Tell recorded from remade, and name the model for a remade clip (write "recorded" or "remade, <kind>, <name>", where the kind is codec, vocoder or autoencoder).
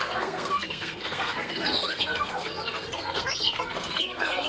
remade, codec, SNAC